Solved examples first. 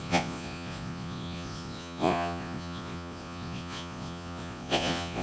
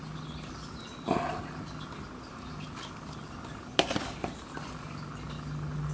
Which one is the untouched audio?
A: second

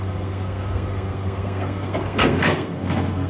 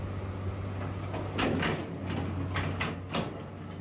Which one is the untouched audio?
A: second